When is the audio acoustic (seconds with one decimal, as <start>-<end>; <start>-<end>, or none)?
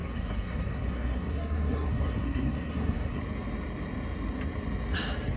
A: 3.2-5.4